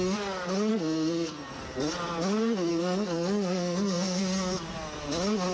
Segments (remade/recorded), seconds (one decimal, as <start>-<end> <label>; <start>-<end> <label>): 0.0-0.7 recorded; 0.7-1.6 remade; 1.6-2.7 recorded; 2.7-4.2 remade; 4.2-5.5 recorded